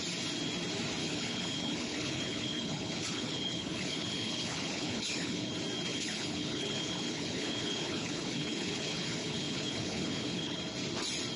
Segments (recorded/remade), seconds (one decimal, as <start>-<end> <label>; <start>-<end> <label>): 0.0-1.0 recorded; 1.0-5.5 remade; 5.5-5.9 recorded; 5.9-10.6 remade; 10.6-11.4 recorded